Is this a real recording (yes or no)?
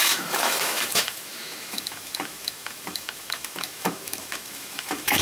no